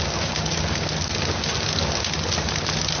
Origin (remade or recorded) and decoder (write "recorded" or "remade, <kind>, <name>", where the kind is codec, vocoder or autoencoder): recorded